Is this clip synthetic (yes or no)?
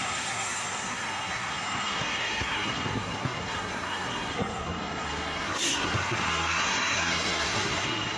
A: yes